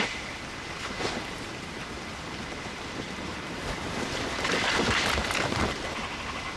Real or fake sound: fake